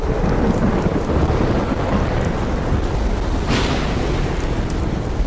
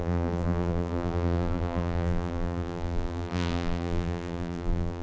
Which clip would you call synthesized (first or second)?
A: second